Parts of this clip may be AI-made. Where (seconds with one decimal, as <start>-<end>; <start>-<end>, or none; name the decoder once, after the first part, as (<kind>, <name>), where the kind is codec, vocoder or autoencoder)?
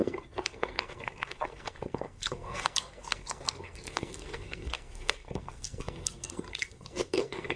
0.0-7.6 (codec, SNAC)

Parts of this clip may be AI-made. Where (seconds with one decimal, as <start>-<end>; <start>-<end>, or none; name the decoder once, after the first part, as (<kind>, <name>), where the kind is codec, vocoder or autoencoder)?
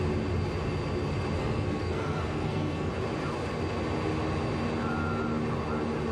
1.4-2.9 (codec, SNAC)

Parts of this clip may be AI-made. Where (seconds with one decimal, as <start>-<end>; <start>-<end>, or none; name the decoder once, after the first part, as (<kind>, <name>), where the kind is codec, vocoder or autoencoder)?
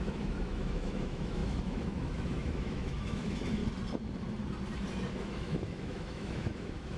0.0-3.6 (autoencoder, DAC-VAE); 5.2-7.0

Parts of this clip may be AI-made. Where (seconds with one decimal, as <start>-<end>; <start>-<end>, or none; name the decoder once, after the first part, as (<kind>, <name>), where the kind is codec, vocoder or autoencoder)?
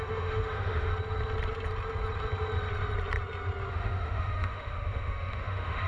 0.0-0.9 (autoencoder, DAC-VAE); 3.7-5.9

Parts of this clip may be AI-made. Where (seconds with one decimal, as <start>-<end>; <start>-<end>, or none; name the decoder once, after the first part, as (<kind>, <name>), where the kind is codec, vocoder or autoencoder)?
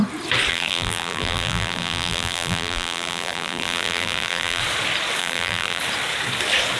0.5-4.6 (vocoder, BigVGAN v2); 5.2-5.8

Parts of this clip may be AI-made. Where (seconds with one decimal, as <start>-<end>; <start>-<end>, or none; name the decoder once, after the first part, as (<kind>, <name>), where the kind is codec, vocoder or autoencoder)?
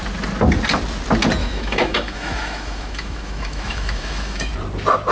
1.4-4.5 (autoencoder, DAC-VAE)